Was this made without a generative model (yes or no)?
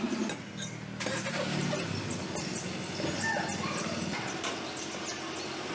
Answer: yes